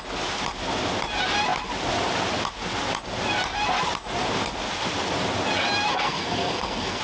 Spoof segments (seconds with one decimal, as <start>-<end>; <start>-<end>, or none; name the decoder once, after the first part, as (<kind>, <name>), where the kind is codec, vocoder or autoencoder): 5.9-7.0 (codec, SNAC)